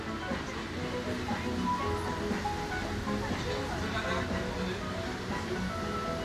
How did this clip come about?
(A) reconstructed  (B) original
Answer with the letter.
B